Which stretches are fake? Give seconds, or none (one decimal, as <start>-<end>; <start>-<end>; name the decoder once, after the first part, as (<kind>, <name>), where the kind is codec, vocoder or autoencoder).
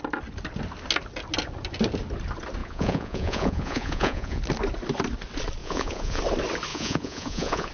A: 2.6-4.4 (vocoder, Vocos); 5.6-6.2; 6.7-7.7